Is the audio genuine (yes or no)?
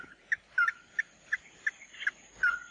no